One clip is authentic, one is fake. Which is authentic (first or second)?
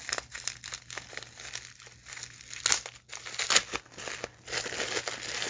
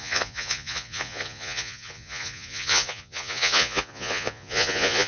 first